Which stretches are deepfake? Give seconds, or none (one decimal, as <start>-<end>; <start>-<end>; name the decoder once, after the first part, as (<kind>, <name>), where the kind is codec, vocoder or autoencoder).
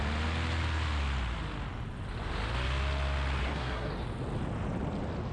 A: 3.4-3.9 (codec, SNAC)